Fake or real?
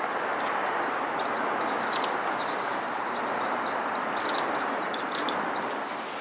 real